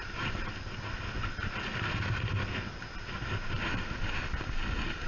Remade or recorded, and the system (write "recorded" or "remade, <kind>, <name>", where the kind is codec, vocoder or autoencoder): recorded